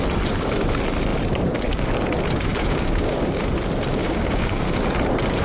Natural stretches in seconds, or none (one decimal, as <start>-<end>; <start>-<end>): 0.0-2.5; 3.4-4.0; 4.7-5.4